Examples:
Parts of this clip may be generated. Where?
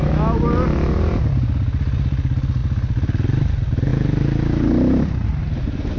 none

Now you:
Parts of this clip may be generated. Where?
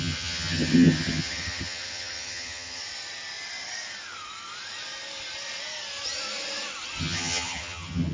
0.0-2.8 (vocoder, HiFi-GAN); 7.0-8.1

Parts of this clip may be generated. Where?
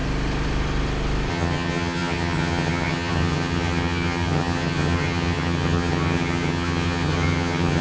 1.3-7.8 (vocoder, HiFi-GAN)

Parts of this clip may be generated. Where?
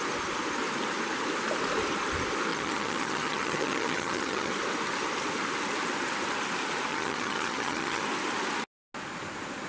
2.5-4.5 (vocoder, HiFi-GAN); 6.9-8.0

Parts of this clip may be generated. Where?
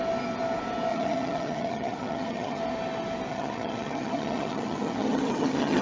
0.9-2.6 (vocoder, HiFi-GAN); 3.3-5.8